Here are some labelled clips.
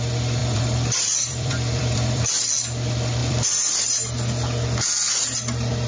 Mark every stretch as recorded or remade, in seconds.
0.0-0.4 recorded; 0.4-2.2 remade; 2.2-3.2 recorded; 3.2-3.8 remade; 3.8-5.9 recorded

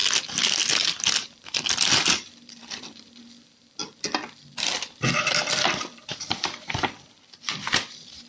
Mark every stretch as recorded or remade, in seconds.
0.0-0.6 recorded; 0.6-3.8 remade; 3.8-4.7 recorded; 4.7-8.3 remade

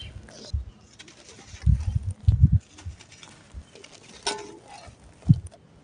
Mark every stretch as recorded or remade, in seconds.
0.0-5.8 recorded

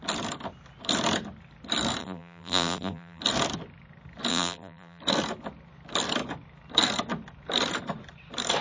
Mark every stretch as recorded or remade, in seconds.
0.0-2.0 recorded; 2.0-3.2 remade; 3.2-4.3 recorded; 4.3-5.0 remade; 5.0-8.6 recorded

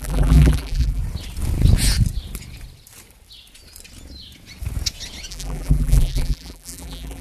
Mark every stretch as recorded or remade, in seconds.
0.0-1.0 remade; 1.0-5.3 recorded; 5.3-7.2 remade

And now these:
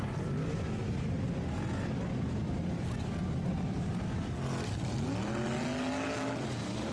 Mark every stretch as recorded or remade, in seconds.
0.0-6.9 recorded

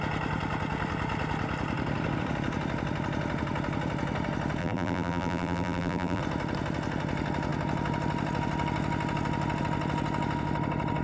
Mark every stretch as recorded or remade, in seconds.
0.0-4.6 recorded; 4.6-6.2 remade; 6.2-11.0 recorded

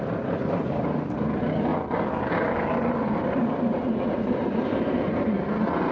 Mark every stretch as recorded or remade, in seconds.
0.0-1.7 remade; 1.7-3.3 recorded; 3.3-5.9 remade